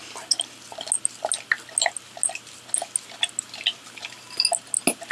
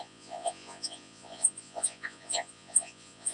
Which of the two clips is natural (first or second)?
first